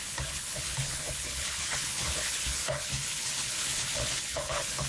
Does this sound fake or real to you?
fake